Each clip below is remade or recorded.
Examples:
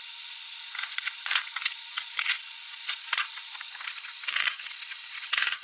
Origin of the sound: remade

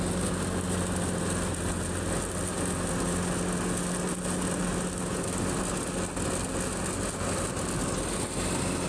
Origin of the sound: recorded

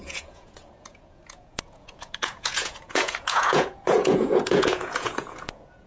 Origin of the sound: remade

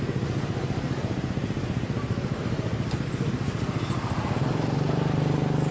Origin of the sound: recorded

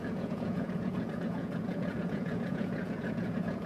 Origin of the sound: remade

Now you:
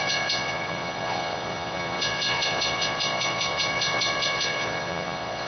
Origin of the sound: remade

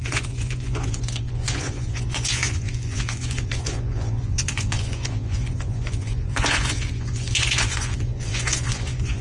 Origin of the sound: remade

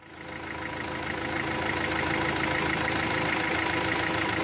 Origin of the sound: recorded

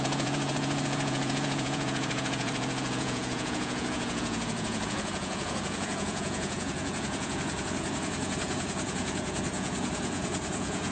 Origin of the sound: remade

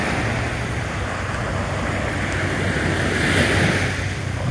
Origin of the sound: recorded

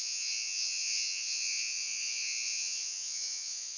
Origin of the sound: remade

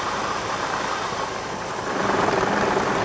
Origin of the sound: recorded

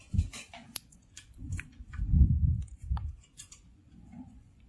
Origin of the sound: remade